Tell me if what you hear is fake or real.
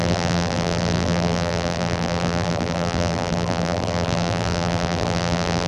fake